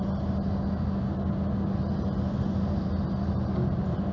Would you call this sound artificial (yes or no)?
no